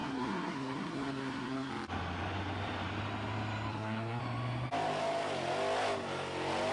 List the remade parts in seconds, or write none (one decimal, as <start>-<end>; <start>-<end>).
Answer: 0.0-1.7; 3.7-4.2